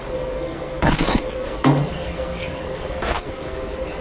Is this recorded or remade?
remade